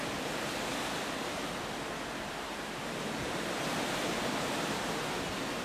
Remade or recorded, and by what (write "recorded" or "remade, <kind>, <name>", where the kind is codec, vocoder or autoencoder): remade, vocoder, BigVGAN v2